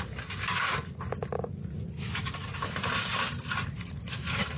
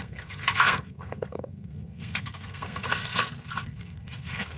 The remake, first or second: second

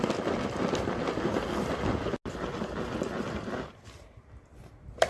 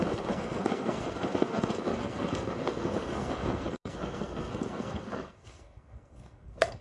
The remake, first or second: second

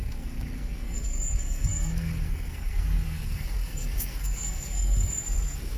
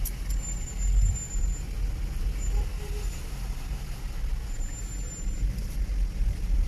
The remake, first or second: first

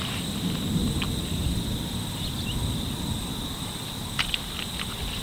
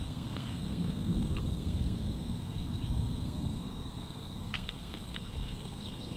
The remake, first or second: second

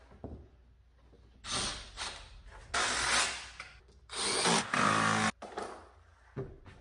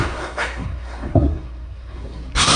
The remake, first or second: second